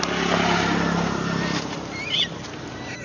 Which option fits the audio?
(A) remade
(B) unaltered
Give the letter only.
B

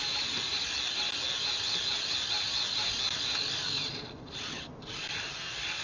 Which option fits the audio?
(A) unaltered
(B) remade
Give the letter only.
A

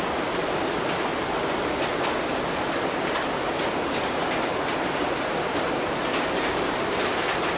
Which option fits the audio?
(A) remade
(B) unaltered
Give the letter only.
B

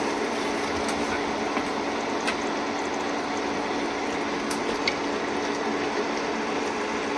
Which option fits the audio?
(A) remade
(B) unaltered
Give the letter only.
B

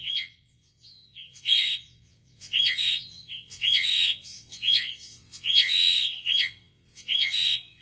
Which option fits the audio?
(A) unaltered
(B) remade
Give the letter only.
B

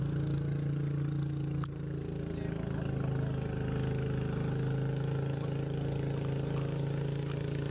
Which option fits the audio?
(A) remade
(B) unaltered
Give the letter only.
B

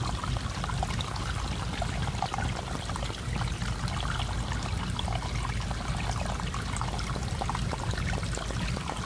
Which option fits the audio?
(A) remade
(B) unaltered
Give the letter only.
B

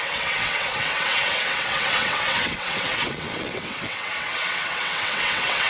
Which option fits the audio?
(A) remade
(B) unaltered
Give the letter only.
A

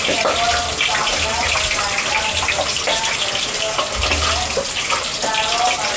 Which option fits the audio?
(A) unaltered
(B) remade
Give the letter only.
A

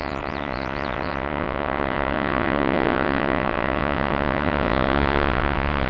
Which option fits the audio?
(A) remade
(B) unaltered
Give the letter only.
A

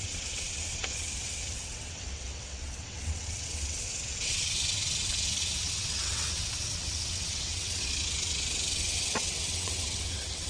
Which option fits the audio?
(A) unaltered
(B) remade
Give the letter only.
B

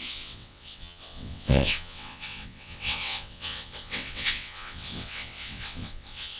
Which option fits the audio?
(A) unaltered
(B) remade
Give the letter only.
B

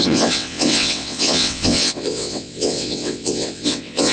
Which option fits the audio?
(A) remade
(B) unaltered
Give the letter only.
A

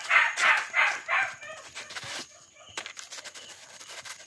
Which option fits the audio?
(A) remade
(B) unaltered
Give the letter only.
B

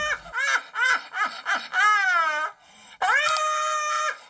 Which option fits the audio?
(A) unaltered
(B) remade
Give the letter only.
A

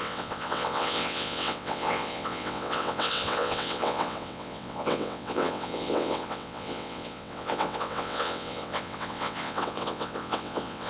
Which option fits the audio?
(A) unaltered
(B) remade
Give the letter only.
B